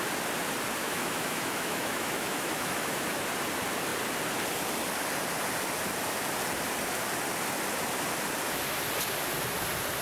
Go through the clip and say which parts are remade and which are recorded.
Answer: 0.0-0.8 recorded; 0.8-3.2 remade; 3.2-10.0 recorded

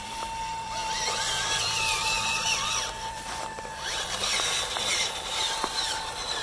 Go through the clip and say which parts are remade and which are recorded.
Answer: 0.0-6.4 remade